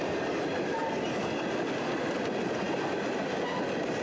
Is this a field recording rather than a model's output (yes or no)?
yes